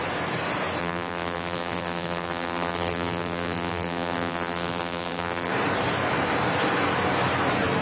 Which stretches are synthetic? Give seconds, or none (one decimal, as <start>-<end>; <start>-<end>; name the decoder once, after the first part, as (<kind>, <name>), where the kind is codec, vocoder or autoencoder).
0.8-5.5 (vocoder, BigVGAN v2)

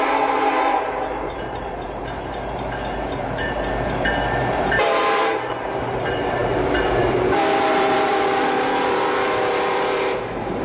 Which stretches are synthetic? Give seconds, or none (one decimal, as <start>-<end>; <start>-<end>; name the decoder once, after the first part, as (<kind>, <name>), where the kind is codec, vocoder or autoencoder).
0.0-10.6 (vocoder, BigVGAN v2)